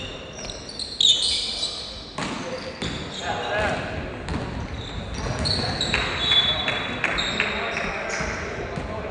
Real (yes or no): yes